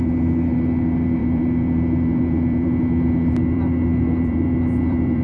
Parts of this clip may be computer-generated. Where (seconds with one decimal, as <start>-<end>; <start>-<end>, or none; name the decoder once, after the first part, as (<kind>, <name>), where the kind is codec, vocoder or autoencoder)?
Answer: 0.0-5.2 (vocoder, BigVGAN v2)